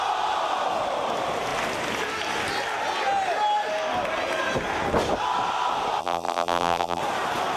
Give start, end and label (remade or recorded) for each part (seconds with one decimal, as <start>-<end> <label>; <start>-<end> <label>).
0.0-6.0 recorded; 6.0-7.0 remade; 7.0-7.6 recorded